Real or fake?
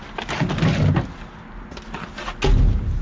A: real